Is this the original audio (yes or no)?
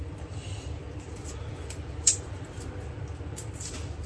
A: no